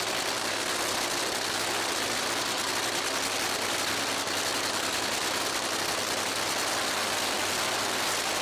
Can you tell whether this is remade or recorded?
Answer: recorded